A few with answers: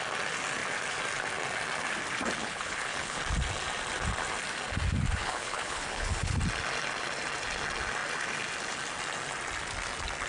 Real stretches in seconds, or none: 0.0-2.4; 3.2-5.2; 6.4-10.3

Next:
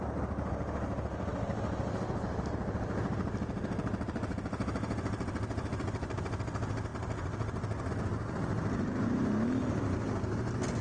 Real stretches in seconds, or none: 0.0-10.8

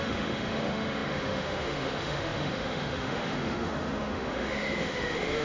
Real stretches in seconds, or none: none

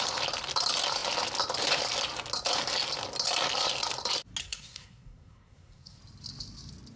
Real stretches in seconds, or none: 0.0-4.4; 6.0-7.0